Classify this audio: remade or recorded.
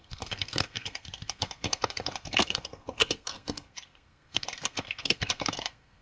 remade